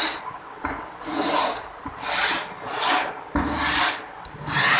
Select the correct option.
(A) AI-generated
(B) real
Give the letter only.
A